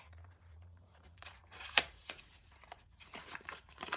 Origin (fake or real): fake